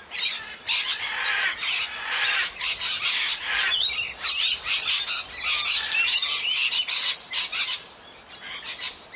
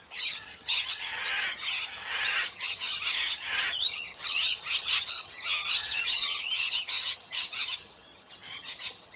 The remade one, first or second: second